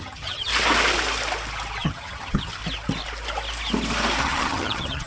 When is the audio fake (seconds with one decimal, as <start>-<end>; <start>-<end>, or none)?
0.0-0.5; 1.8-2.6; 4.2-5.1